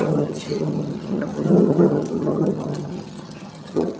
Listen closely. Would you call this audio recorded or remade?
remade